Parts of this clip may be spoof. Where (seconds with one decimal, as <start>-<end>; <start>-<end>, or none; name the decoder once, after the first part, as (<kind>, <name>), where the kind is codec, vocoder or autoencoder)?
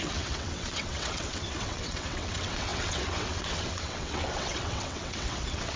0.0-5.8 (vocoder, WaveNeXt)